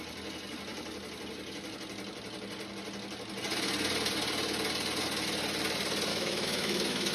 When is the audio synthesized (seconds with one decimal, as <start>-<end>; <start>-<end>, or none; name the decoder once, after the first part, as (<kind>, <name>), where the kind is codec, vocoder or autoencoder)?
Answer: 6.1-7.1 (autoencoder, DAC-VAE)